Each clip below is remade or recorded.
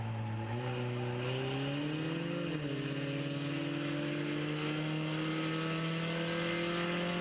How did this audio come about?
recorded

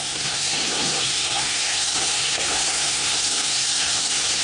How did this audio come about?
remade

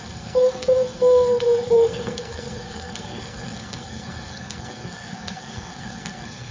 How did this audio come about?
remade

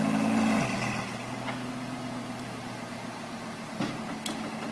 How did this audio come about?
recorded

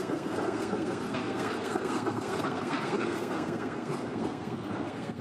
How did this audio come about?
remade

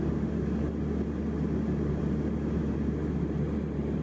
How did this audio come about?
recorded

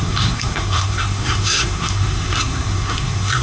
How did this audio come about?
remade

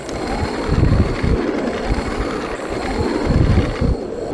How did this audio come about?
recorded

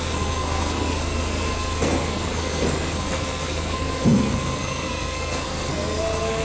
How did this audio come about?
remade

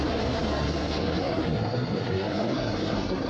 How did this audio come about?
remade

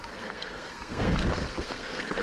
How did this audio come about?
remade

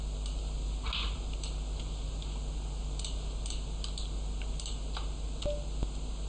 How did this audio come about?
recorded